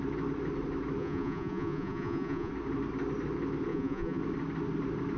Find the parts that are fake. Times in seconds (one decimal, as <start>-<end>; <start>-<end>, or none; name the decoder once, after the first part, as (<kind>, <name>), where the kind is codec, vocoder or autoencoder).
1.0-2.5 (vocoder, Vocos); 3.7-4.2